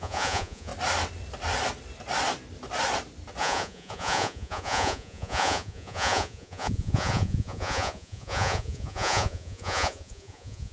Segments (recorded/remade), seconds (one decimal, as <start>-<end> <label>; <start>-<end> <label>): 0.0-0.7 remade; 0.7-3.4 recorded; 3.4-10.7 remade